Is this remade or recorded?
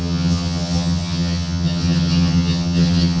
remade